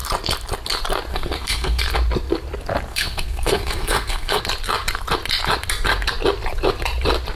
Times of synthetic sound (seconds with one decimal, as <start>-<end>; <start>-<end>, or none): 1.1-1.8; 2.9-4.4